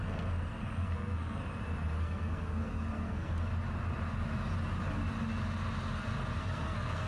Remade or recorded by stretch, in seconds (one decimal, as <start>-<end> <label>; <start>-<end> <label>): 0.0-1.4 remade; 1.4-2.0 recorded; 2.0-3.5 remade; 3.5-6.4 recorded; 6.4-7.1 remade